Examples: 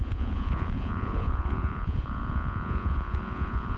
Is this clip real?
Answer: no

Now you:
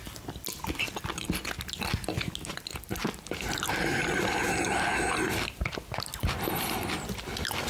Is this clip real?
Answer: yes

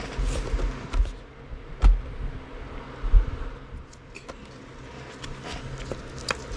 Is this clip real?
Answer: yes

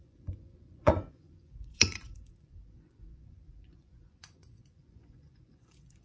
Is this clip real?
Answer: no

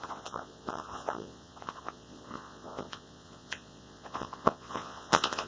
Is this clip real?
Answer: no